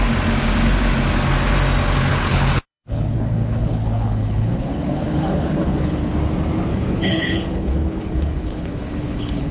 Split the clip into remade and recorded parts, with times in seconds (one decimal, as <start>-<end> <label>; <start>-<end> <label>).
0.0-2.1 recorded; 2.1-6.1 remade; 6.1-6.7 recorded; 6.7-9.5 remade